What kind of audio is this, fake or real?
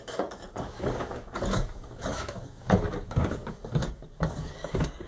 fake